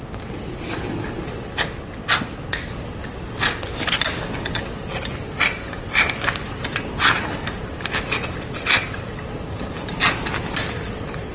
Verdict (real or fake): real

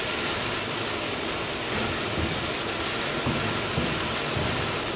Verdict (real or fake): real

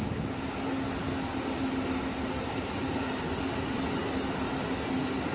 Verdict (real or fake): real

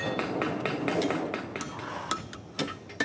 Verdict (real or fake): real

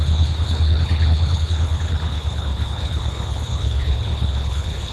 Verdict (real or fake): fake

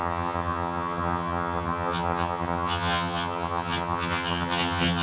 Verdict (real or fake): fake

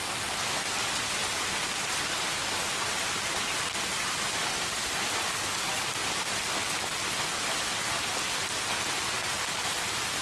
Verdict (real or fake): real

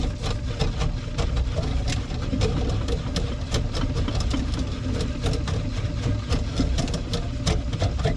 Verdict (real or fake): real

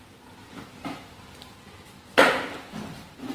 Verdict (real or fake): real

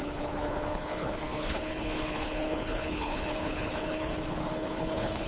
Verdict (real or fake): fake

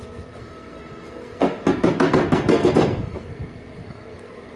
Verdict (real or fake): fake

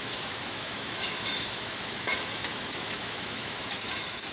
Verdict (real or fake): fake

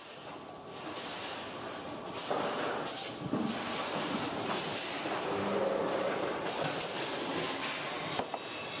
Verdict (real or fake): real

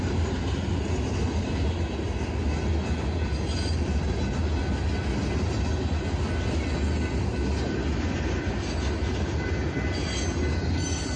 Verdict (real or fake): real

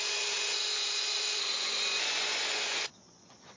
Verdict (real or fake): fake